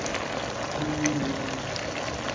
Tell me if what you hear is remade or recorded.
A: recorded